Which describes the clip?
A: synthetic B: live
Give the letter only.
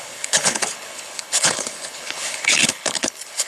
A